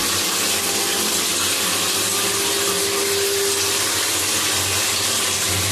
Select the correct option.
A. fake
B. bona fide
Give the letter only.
B